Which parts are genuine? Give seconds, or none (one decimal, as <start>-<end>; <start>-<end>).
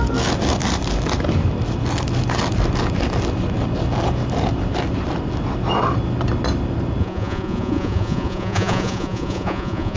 0.0-7.0